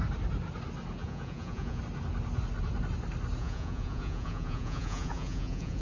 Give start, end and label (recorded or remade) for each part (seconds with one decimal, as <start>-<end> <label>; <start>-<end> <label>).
0.0-1.0 recorded; 1.0-1.8 remade; 1.8-3.4 recorded; 3.4-5.8 remade